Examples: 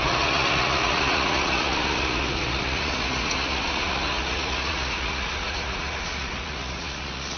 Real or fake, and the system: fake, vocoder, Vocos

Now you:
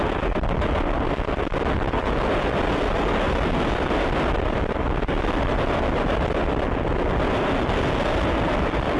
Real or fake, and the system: real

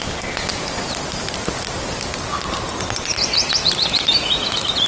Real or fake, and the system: real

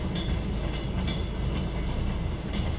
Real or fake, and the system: real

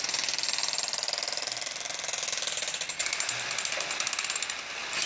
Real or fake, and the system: real